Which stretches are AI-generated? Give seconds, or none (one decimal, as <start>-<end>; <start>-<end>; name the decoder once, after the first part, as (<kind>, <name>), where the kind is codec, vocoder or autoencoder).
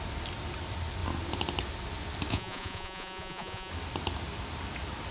2.3-3.7 (vocoder, Vocos)